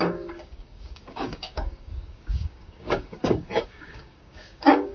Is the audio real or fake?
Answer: fake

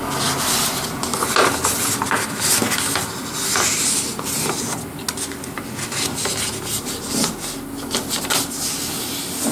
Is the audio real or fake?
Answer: real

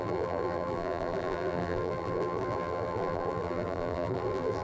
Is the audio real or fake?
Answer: fake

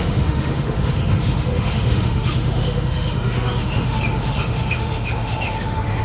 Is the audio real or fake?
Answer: fake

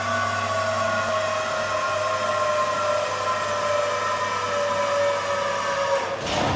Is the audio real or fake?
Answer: real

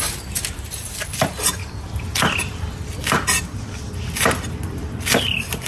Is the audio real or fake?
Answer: real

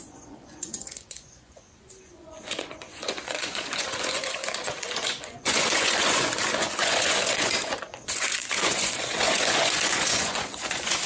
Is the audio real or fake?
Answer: fake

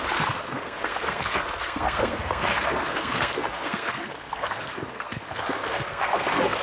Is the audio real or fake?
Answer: fake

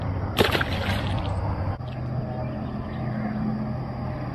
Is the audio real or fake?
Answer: real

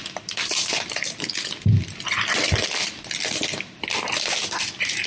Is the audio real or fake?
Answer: real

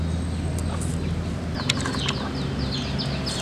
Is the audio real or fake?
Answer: real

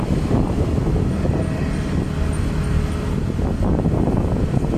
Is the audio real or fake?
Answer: real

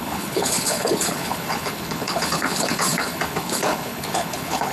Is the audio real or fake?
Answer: fake